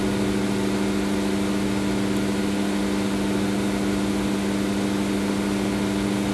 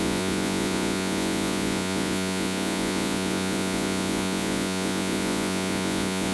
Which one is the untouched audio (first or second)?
first